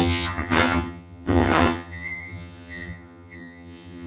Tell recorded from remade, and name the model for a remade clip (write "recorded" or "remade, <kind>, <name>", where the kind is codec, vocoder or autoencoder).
remade, vocoder, HiFi-GAN